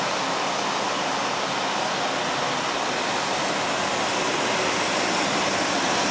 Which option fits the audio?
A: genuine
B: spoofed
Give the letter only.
A